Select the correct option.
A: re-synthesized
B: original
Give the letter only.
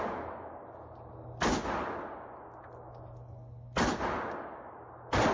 B